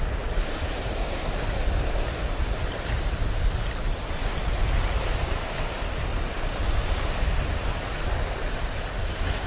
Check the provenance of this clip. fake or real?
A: real